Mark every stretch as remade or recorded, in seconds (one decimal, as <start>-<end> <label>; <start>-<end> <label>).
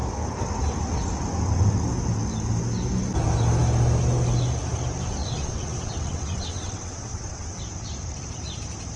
0.0-5.2 recorded; 5.2-7.6 remade; 7.6-9.0 recorded